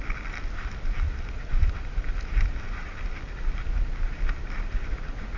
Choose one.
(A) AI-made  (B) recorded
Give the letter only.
B